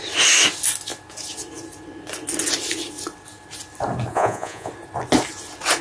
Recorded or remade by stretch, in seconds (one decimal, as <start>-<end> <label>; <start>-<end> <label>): 0.0-4.1 recorded; 4.1-4.7 remade; 4.7-5.8 recorded